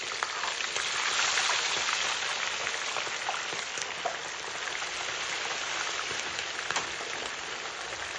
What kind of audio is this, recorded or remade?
recorded